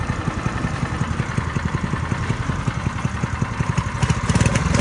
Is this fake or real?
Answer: real